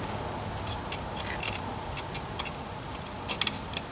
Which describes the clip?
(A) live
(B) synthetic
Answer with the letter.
A